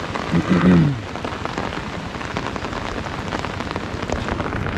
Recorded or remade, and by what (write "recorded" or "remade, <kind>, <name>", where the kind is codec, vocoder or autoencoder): recorded